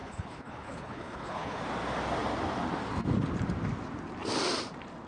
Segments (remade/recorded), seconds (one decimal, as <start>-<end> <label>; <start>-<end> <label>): 0.0-1.6 remade; 1.6-5.1 recorded